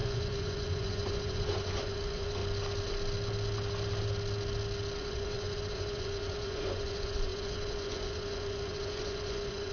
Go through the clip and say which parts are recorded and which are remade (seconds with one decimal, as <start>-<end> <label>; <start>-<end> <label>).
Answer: 0.0-2.4 remade; 2.4-5.0 recorded; 5.0-9.7 remade